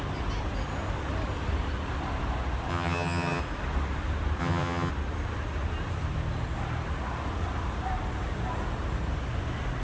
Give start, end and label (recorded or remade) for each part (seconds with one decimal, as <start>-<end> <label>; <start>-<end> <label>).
0.0-2.7 recorded; 2.7-3.4 remade; 3.4-4.4 recorded; 4.4-4.9 remade; 4.9-9.8 recorded

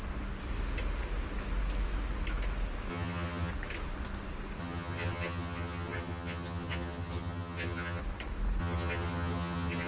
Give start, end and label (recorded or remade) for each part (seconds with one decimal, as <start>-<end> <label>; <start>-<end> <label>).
0.0-2.9 recorded; 2.9-3.5 remade; 3.5-4.6 recorded; 4.6-8.0 remade; 8.0-8.6 recorded; 8.6-9.9 remade

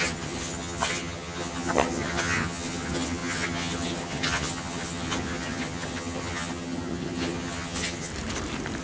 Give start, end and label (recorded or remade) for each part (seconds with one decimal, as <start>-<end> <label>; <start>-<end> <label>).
0.0-8.1 remade; 8.1-8.8 recorded

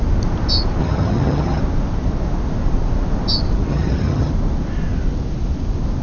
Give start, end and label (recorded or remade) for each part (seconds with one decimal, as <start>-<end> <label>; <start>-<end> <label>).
0.0-0.8 recorded; 0.8-1.6 remade; 1.6-3.7 recorded; 3.7-4.3 remade; 4.3-6.0 recorded

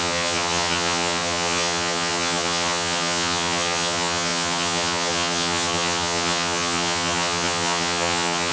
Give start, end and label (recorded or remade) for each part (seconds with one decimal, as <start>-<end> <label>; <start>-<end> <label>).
0.0-8.5 remade

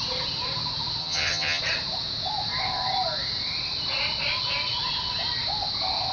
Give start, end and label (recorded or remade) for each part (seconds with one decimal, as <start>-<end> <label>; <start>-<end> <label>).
0.0-1.0 recorded; 1.0-1.6 remade; 1.6-6.1 recorded